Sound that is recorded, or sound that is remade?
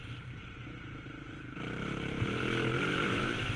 remade